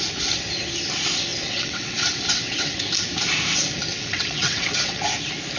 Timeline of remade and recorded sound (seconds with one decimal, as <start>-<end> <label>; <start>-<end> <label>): 0.0-1.3 recorded; 1.3-2.8 remade; 2.8-3.9 recorded; 3.9-5.0 remade; 5.0-5.6 recorded